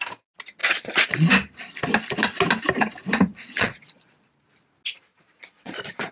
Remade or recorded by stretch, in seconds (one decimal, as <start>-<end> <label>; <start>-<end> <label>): 0.0-0.6 recorded; 0.6-1.3 remade; 1.3-3.3 recorded; 3.3-4.3 remade; 4.3-5.1 recorded; 5.1-6.1 remade